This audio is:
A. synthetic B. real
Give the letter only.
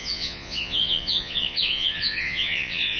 A